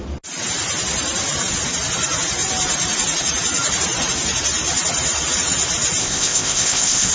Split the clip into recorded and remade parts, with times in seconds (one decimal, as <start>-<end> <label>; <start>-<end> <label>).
0.0-6.0 recorded; 6.0-7.1 remade